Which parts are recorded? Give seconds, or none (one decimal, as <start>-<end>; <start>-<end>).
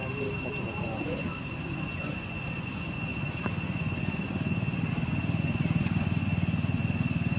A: 0.0-0.8